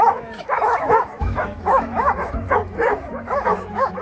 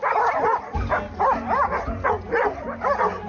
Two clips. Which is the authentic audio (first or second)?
second